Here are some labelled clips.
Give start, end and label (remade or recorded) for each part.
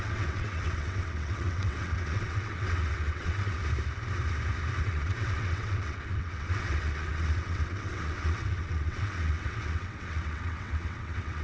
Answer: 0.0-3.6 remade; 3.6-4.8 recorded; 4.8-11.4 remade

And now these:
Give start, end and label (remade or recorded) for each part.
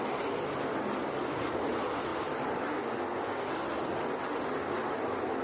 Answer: 0.0-1.0 recorded; 1.0-1.7 remade; 1.7-2.1 recorded; 2.1-2.7 remade; 2.7-5.4 recorded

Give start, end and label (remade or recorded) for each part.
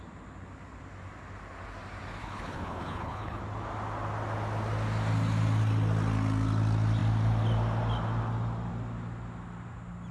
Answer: 0.0-2.2 recorded; 2.2-3.4 remade; 3.4-10.1 recorded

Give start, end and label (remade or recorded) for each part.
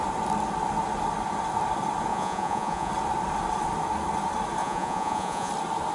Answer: 0.0-2.1 recorded; 2.1-2.9 remade; 2.9-4.6 recorded; 4.6-5.5 remade; 5.5-5.9 recorded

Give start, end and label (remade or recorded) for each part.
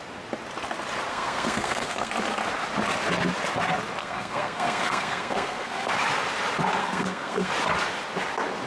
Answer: 0.0-1.1 recorded; 1.1-2.1 remade; 2.1-4.0 recorded; 4.0-5.9 remade; 5.9-6.8 recorded; 6.8-7.5 remade; 7.5-8.7 recorded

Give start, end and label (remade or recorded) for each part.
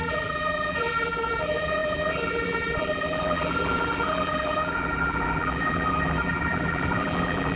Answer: 0.0-7.6 remade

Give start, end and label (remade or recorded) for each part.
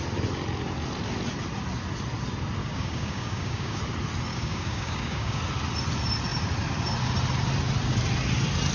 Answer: 0.0-2.6 recorded; 2.6-3.8 remade; 3.8-4.3 recorded; 4.3-5.4 remade; 5.4-8.7 recorded